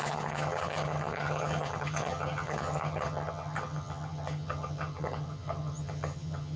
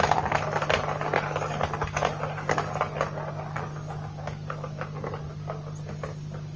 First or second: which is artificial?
first